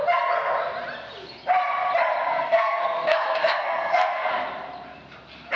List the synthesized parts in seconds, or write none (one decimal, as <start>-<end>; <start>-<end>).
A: 2.3-4.3